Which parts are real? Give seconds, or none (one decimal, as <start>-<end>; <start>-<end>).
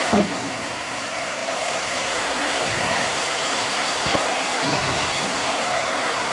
none